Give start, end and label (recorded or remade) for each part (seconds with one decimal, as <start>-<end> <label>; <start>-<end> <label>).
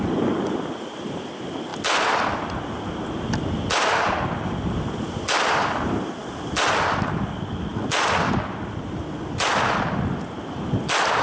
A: 0.0-11.2 recorded